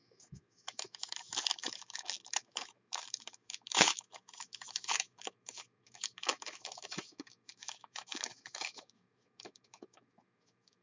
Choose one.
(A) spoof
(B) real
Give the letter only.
A